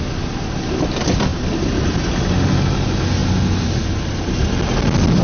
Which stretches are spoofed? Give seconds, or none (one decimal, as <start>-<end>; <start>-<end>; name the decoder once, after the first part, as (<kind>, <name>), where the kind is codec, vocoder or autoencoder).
1.3-2.1 (vocoder, BigVGAN v2); 3.2-4.2

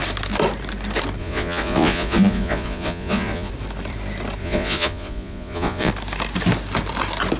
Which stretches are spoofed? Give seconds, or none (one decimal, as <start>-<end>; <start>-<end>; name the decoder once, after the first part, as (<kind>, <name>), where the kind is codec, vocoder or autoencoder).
1.2-3.5 (vocoder, Vocos); 4.4-5.9

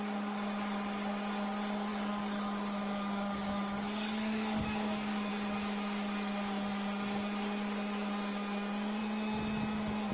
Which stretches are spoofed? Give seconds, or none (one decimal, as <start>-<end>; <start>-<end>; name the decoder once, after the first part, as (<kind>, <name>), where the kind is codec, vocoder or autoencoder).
1.9-5.3 (codec, DAC)

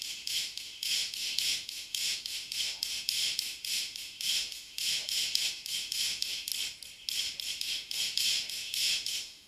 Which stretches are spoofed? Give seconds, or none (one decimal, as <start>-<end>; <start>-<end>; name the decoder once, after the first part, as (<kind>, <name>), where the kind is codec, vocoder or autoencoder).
0.0-6.5 (autoencoder, DAC-VAE); 7.6-9.5

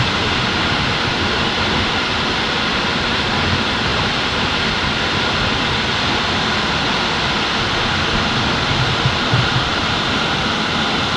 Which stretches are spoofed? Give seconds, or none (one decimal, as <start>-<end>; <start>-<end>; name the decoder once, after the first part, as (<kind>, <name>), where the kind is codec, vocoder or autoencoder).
3.9-5.1 (vocoder, BigVGAN v2); 9.7-10.3

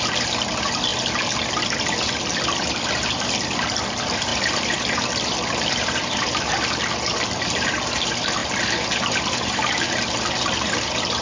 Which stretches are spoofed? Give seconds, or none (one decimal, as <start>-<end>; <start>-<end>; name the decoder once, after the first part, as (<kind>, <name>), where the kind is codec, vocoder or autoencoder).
0.9-2.9 (vocoder, BigVGAN v2); 4.3-6.8

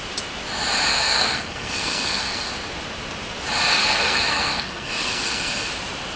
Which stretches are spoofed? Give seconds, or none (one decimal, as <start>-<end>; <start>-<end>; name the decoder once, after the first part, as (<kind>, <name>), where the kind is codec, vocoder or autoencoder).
0.9-2.5 (codec, SNAC); 3.8-5.7

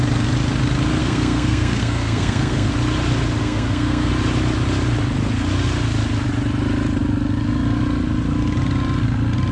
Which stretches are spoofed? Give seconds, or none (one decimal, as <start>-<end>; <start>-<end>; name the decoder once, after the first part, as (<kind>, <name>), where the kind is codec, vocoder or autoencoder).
1.0-2.7 (codec, SNAC); 3.4-4.1